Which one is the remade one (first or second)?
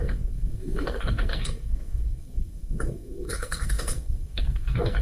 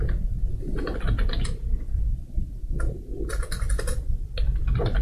first